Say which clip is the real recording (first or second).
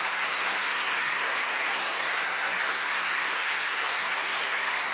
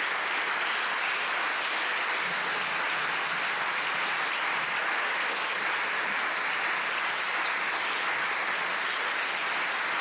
second